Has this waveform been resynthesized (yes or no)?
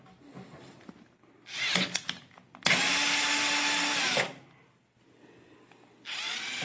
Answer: no